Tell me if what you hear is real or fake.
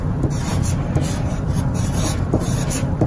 fake